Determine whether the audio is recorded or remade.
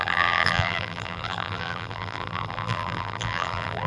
remade